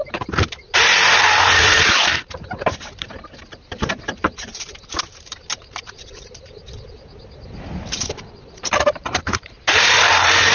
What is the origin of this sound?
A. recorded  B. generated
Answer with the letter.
B